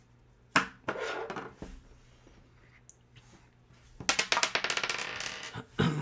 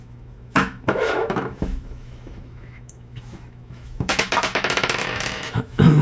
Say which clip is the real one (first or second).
first